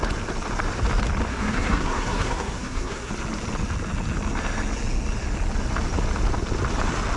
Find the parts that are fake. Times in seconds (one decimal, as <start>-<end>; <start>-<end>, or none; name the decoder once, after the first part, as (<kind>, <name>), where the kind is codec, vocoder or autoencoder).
1.3-3.1 (codec, SNAC)